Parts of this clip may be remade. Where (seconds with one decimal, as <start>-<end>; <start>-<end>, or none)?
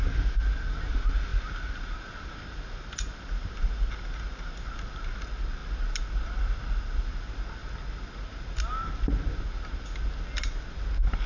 none